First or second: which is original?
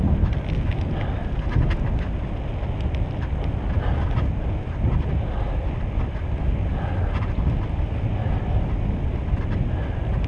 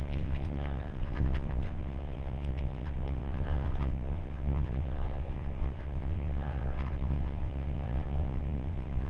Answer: first